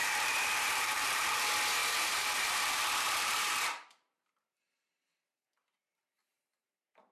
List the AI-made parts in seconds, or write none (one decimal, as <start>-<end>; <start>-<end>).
0.0-1.4; 1.8-4.3